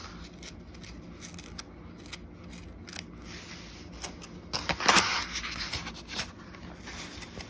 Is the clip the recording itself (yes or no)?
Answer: yes